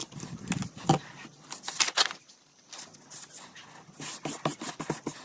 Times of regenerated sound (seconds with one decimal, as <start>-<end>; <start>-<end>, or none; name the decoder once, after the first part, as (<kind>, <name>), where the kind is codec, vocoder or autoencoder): none